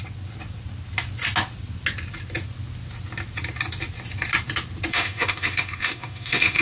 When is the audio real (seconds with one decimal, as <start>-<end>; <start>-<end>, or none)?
0.0-4.9